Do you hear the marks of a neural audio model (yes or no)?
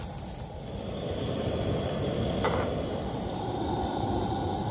yes